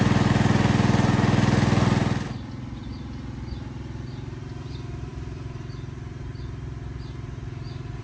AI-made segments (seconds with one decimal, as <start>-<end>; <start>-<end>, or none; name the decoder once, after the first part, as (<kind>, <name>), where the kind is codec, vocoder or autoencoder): none